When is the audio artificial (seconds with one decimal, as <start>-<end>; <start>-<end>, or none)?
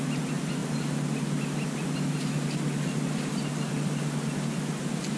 none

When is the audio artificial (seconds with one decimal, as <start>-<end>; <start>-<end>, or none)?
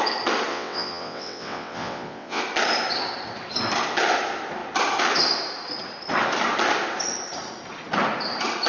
0.5-2.4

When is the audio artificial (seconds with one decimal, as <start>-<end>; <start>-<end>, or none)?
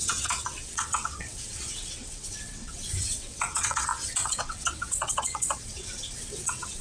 0.0-6.8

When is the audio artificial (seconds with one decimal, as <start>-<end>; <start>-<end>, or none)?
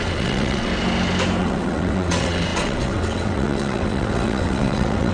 0.0-0.7; 1.4-5.1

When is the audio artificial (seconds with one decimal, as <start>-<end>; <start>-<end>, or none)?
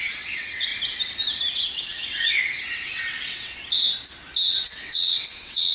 0.0-0.7; 1.5-3.6; 4.5-5.7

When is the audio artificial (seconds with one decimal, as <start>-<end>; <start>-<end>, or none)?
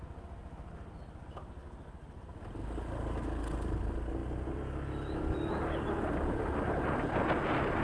none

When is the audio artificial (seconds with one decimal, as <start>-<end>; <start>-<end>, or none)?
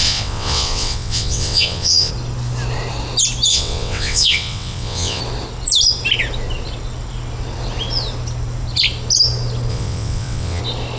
0.0-2.1; 3.5-5.2; 9.7-10.6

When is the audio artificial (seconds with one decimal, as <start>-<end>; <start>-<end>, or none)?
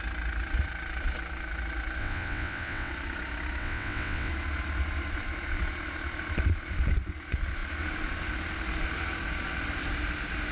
2.0-2.9; 3.6-4.3